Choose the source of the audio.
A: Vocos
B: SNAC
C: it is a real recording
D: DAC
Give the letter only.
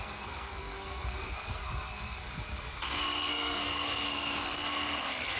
B